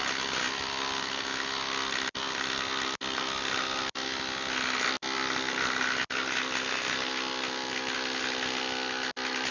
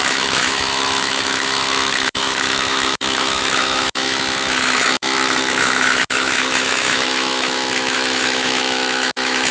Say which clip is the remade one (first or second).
second